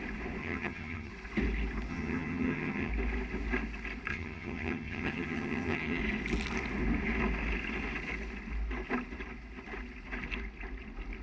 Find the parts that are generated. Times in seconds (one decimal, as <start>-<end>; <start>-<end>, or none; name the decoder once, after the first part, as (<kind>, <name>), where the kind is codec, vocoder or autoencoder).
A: 0.4-1.1 (vocoder, HiFi-GAN); 1.9-2.9; 4.1-6.0